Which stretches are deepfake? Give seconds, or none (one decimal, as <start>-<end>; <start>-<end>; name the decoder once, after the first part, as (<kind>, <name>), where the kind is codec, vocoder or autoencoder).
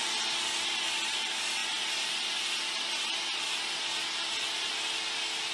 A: none